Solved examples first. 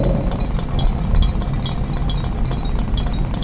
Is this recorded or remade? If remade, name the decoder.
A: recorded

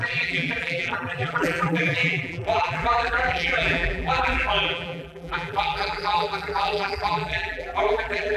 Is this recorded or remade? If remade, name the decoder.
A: remade, vocoder, BigVGAN v2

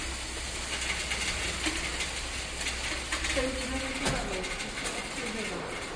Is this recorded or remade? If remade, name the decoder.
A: recorded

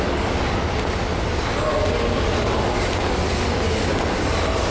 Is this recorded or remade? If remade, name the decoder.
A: recorded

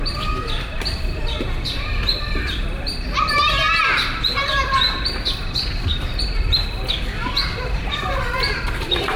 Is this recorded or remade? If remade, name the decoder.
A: remade, vocoder, BigVGAN v2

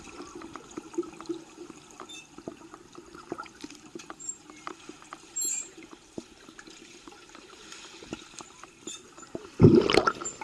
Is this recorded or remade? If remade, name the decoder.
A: remade, vocoder, BigVGAN v2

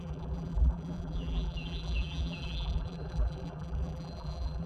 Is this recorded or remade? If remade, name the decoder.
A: remade, vocoder, BigVGAN v2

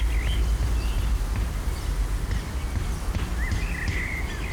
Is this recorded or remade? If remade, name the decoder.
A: recorded